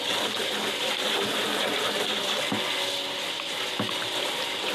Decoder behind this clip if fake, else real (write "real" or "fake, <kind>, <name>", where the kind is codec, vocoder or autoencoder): real